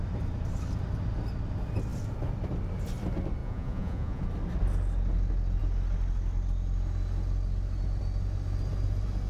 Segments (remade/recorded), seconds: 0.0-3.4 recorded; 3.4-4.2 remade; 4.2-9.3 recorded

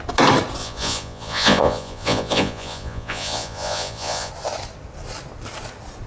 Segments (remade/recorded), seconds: 0.0-0.6 recorded; 0.6-4.3 remade; 4.3-6.1 recorded

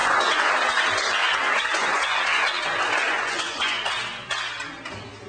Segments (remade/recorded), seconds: 0.0-0.5 remade; 0.5-1.2 recorded; 1.2-3.9 remade; 3.9-5.3 recorded

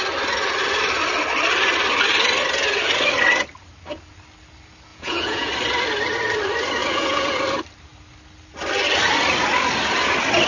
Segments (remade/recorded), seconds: 0.0-4.9 recorded; 4.9-5.5 remade; 5.5-6.8 recorded; 6.8-7.4 remade; 7.4-10.5 recorded

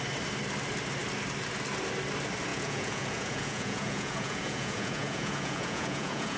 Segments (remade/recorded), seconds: 0.0-2.5 recorded; 2.5-6.4 remade

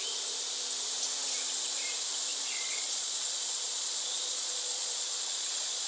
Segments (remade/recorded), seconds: 0.0-2.3 recorded; 2.3-5.9 remade